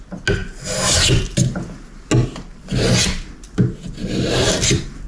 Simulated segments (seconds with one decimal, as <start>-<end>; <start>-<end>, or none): none